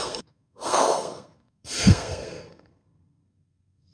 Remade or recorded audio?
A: remade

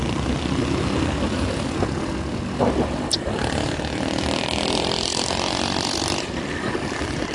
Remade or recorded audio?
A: recorded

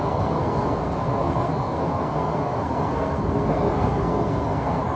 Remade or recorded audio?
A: remade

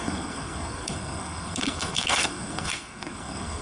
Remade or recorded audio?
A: remade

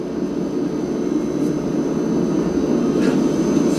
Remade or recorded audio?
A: recorded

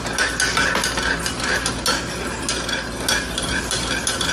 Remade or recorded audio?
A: recorded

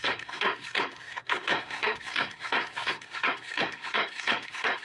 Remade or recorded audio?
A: remade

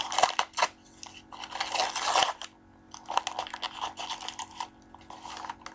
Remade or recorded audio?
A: recorded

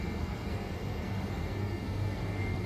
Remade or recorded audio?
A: remade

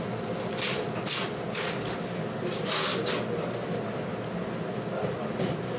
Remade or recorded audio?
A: recorded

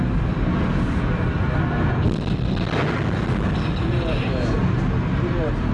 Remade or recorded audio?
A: recorded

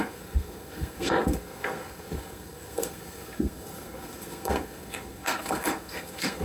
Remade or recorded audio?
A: remade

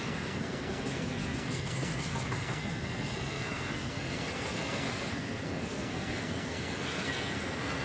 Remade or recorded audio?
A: remade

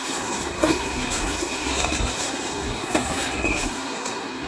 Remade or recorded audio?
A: remade